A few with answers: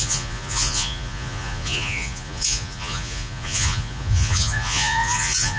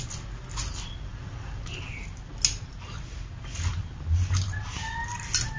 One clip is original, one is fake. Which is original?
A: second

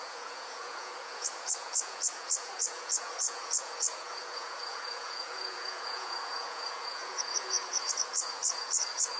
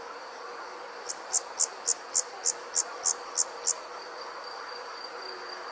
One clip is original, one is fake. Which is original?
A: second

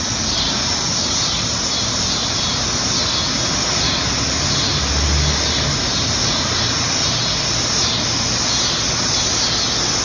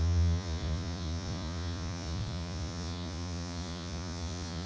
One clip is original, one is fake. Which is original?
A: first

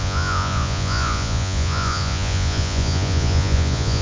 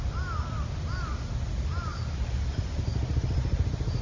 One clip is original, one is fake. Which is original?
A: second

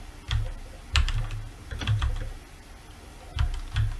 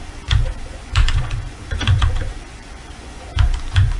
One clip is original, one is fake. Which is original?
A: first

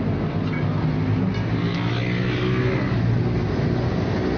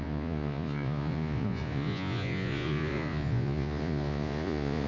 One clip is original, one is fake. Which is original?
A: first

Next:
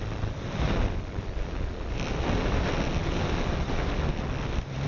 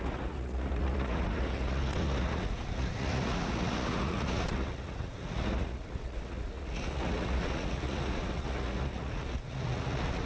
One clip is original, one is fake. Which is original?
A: first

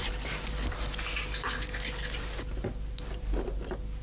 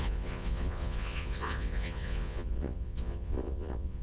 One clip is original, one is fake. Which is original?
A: first